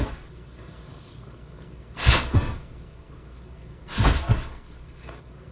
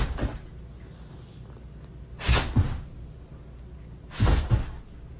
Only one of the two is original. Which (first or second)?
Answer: second